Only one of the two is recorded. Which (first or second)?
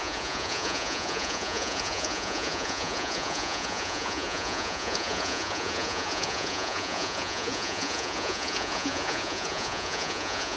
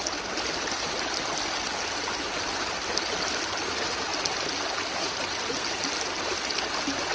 second